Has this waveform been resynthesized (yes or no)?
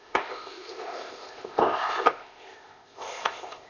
yes